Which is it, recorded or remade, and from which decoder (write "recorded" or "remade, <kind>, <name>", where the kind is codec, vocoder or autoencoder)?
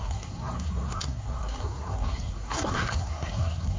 remade, codec, SNAC